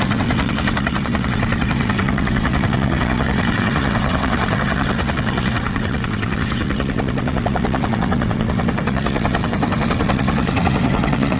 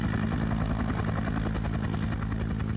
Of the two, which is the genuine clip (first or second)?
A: second